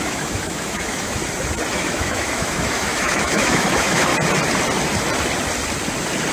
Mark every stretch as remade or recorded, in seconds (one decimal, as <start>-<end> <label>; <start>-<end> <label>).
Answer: 0.0-1.2 remade; 1.2-1.7 recorded; 1.7-4.1 remade; 4.1-6.3 recorded